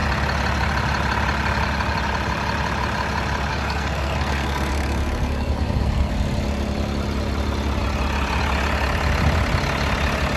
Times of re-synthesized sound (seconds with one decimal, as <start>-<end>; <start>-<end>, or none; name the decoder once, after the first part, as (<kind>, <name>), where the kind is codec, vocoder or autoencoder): 3.5-6.1 (codec, SNAC)